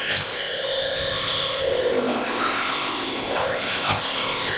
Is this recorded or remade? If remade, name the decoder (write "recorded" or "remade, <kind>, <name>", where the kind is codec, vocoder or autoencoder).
remade, codec, ZipCodec